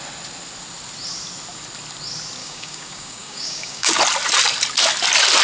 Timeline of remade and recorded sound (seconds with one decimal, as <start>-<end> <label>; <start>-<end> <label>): 0.0-2.4 recorded; 2.4-4.0 remade; 4.0-5.4 recorded